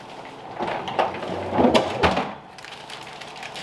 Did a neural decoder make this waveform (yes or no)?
no